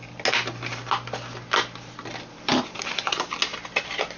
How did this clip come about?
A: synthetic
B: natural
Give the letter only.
B